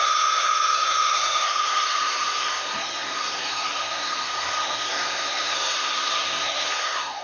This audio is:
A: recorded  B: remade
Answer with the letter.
B